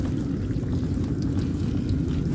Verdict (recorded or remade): recorded